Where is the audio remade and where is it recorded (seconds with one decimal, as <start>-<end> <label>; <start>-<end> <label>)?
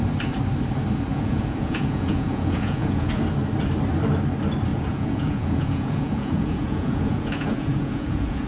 0.0-1.1 recorded; 1.1-3.1 remade; 3.1-4.7 recorded; 4.7-8.5 remade